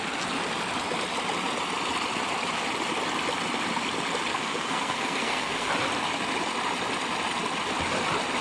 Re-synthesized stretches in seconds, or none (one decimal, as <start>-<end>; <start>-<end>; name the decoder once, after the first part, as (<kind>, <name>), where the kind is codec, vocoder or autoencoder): 4.3-5.7 (codec, SNAC)